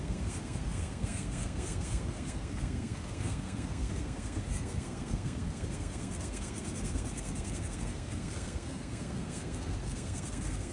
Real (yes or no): no